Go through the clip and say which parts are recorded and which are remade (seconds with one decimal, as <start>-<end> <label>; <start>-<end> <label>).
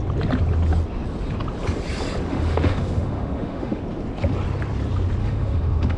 0.0-2.3 recorded; 2.3-3.8 remade; 3.8-5.2 recorded; 5.2-6.0 remade